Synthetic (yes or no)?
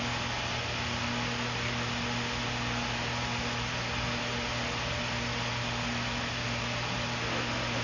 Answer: no